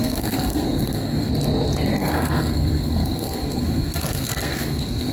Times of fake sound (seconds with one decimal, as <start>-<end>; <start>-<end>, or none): 0.0-1.3; 2.0-5.1